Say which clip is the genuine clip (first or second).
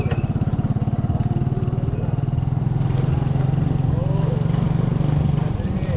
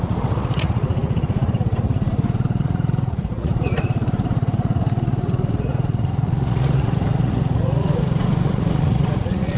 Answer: first